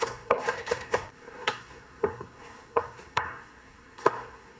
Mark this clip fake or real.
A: fake